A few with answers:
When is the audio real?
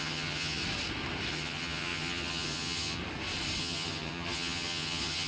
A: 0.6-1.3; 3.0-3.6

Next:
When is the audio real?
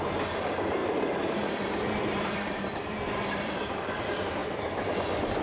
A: 0.0-0.8; 4.0-4.4; 4.9-5.4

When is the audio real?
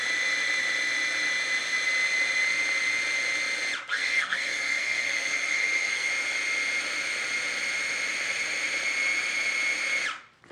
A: 0.0-3.9; 6.1-10.5